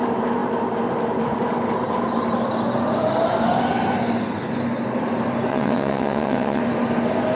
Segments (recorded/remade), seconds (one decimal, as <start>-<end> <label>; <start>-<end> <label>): 0.0-5.5 recorded; 5.5-6.6 remade; 6.6-7.4 recorded